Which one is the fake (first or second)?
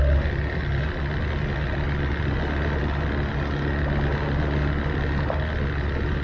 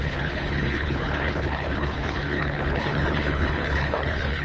second